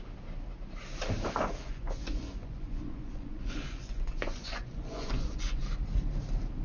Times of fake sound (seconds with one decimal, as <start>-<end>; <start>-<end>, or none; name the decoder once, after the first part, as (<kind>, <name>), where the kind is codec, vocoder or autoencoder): 1.6-5.6 (vocoder, Vocos)